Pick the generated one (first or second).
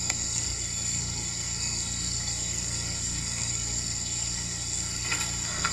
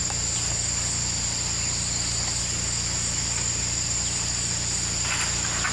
first